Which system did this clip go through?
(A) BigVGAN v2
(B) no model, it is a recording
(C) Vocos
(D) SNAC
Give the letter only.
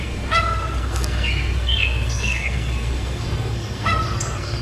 D